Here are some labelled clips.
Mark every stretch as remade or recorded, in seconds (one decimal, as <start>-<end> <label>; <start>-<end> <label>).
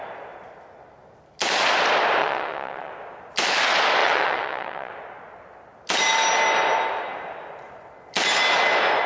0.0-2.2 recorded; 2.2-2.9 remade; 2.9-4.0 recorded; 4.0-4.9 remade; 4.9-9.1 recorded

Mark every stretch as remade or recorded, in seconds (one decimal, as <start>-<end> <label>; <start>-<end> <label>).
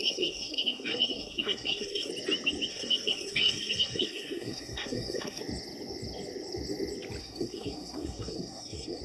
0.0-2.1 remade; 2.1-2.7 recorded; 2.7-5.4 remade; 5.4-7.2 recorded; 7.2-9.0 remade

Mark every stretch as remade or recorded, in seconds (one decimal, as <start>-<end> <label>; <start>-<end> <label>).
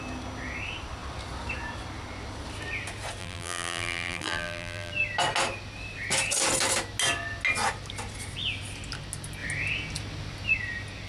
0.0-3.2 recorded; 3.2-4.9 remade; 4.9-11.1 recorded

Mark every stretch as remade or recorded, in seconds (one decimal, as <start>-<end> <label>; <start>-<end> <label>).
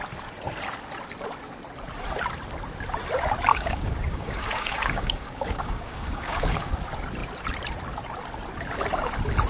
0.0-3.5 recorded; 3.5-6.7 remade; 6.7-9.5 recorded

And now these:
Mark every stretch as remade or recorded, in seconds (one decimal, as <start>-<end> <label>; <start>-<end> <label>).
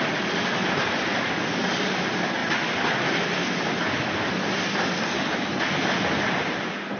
0.0-7.0 recorded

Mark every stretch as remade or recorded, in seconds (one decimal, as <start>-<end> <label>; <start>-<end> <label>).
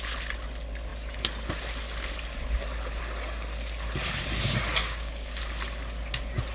0.0-4.8 recorded; 4.8-5.4 remade; 5.4-6.5 recorded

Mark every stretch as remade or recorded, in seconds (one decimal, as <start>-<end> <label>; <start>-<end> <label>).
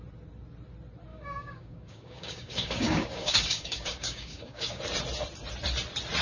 0.0-1.1 recorded; 1.1-4.8 remade; 4.8-6.2 recorded